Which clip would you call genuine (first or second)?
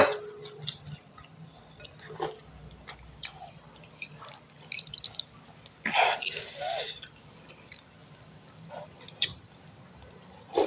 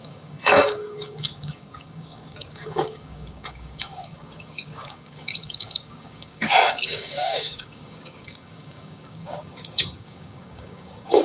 first